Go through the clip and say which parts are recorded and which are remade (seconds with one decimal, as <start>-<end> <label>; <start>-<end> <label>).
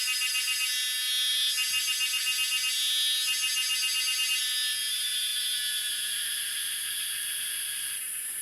0.0-8.4 recorded